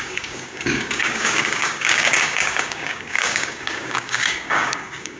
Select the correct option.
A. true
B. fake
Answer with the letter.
B